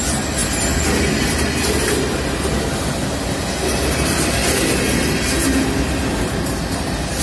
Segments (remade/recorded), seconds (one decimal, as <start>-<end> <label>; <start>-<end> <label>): 0.0-7.2 recorded